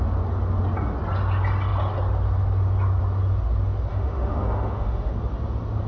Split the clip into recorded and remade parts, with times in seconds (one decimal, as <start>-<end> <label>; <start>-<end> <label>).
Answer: 0.0-3.9 recorded; 3.9-5.1 remade; 5.1-5.9 recorded